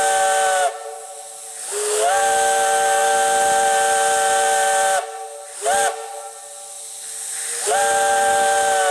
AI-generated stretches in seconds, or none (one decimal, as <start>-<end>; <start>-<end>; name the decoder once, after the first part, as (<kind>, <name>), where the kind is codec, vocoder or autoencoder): none